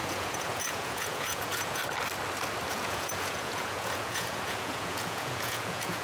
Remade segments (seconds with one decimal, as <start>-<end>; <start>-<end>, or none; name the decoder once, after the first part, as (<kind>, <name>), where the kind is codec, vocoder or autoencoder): 0.0-1.8 (vocoder, Vocos); 2.7-6.0